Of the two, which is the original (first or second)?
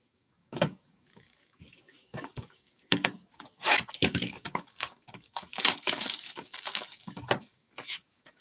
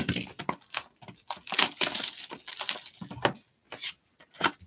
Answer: second